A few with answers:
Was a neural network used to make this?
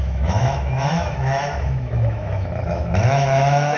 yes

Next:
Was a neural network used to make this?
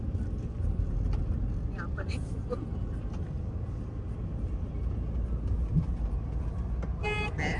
no